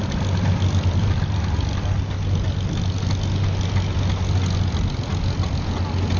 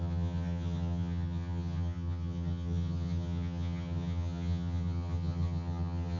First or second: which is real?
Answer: first